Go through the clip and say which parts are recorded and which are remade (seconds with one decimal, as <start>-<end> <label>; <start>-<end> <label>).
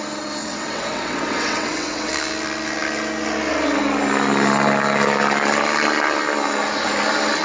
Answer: 0.0-0.4 recorded; 0.4-2.1 remade; 2.1-7.4 recorded